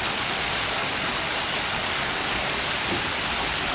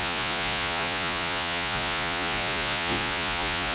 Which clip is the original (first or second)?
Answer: first